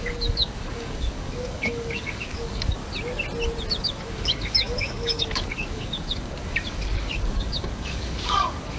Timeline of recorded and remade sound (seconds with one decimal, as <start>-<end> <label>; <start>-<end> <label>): 0.0-2.8 remade; 2.8-3.8 recorded; 3.8-8.8 remade